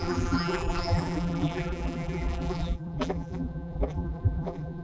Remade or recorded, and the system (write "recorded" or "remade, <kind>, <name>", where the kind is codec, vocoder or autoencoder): remade, vocoder, BigVGAN v2